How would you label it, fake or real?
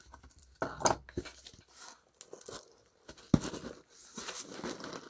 real